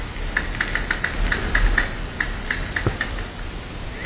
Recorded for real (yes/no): yes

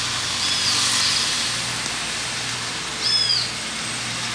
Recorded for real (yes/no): yes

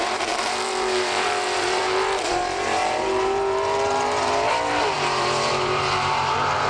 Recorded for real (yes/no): no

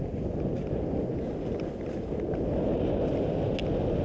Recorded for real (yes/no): yes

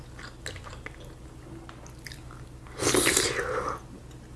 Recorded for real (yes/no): yes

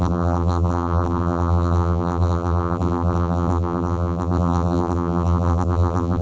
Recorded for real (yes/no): no